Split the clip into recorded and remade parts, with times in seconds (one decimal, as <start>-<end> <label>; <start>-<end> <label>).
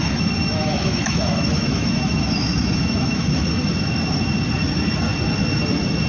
0.0-3.7 remade; 3.7-6.1 recorded